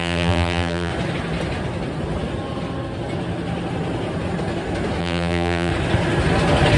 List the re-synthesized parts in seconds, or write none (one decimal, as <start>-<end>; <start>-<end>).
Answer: 0.0-0.9; 5.0-5.7